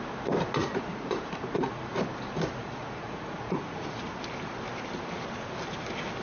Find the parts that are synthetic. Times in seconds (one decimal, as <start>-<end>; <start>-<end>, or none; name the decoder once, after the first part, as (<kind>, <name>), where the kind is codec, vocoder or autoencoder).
0.6-1.8 (vocoder, Vocos); 2.6-4.2